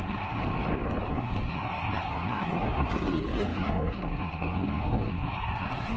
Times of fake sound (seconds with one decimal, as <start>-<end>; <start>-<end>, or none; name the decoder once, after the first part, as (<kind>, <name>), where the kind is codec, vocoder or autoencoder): 0.0-0.4 (codec, SNAC); 1.1-6.0